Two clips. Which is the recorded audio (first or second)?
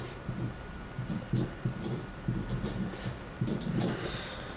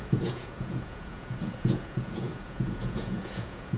first